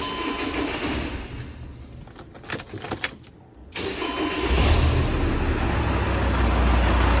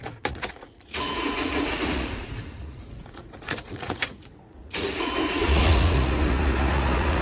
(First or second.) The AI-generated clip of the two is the second